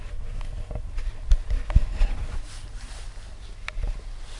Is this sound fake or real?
real